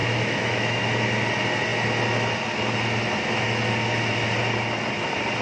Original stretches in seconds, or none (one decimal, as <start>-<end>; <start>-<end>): 0.8-5.4